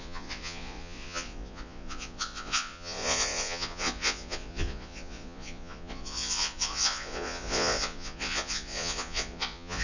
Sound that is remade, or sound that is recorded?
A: remade